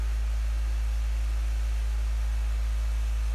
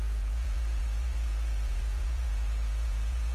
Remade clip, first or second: second